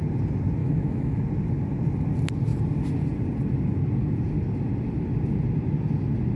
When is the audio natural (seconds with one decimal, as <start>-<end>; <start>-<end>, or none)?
0.0-0.6; 1.2-6.4